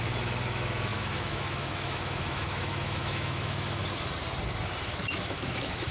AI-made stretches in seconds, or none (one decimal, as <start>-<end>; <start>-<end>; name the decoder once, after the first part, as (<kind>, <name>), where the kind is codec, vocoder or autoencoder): 0.0-3.8 (autoencoder, DAC-VAE); 4.8-5.9